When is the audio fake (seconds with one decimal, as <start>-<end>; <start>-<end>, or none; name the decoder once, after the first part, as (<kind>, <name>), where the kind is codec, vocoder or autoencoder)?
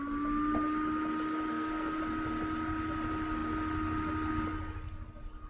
1.5-2.0 (codec, SNAC)